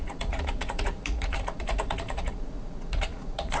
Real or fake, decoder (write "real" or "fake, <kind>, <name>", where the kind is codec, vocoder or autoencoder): fake, vocoder, Vocos